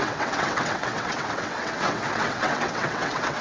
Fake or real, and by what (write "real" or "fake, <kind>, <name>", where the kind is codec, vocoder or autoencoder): fake, vocoder, WaveNeXt